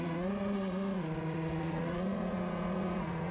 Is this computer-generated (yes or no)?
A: yes